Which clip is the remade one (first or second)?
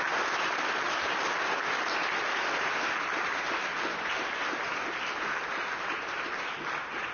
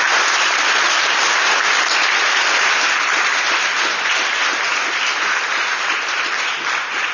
second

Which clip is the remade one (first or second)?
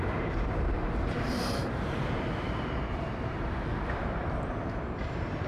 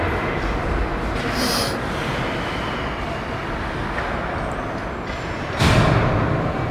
first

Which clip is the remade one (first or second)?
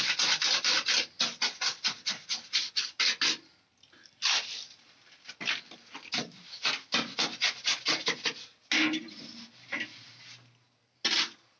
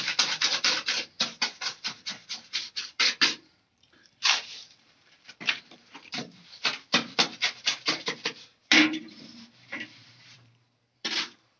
second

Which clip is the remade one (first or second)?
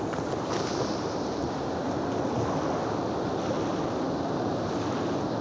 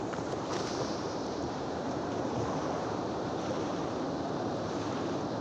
second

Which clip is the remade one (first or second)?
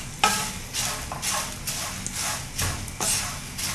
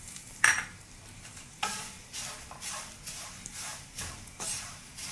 second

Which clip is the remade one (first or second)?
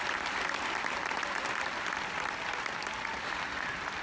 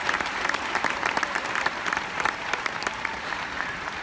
second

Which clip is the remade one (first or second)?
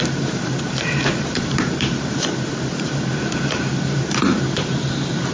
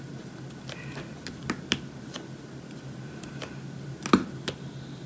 first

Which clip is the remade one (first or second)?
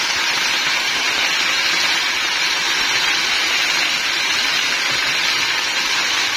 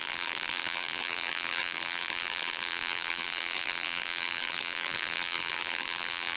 second